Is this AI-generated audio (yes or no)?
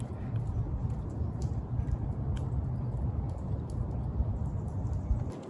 no